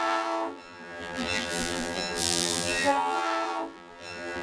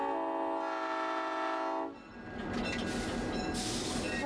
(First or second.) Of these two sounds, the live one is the second